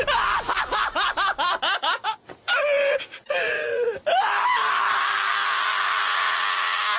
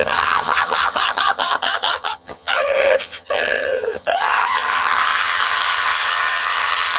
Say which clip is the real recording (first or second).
first